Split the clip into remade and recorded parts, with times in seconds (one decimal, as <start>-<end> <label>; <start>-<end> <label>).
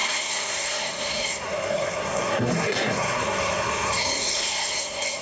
0.0-5.2 remade